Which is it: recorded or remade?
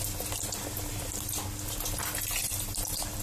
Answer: recorded